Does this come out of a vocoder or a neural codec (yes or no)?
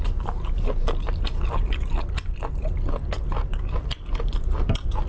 no